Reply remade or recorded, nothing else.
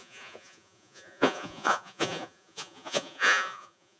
remade